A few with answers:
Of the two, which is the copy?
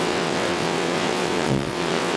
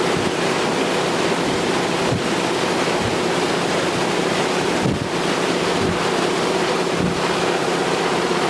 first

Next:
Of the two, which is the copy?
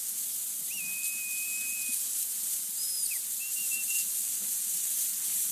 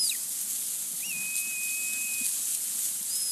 first